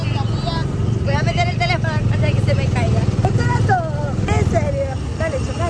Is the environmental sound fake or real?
real